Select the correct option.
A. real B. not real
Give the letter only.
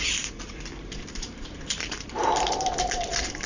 B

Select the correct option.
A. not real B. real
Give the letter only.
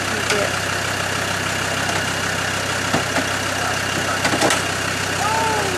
B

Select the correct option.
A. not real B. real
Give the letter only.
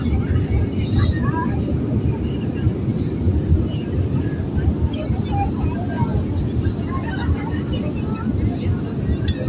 B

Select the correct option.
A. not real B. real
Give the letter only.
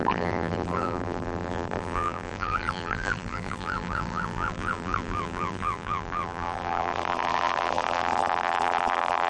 A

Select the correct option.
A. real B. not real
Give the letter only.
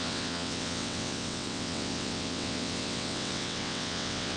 B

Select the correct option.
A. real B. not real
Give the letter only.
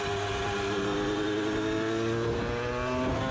A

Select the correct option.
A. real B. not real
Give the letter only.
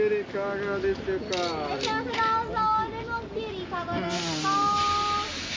A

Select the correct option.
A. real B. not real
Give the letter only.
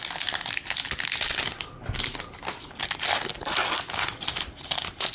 A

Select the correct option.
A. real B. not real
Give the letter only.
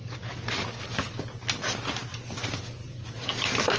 A